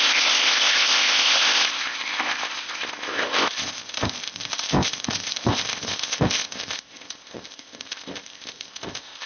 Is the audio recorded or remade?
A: remade